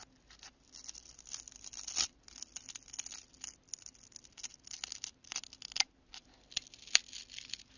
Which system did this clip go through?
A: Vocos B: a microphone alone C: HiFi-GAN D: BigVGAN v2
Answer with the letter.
B